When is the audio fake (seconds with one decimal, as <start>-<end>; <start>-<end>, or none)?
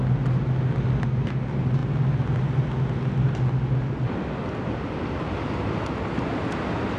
none